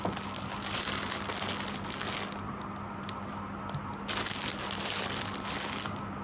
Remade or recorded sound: recorded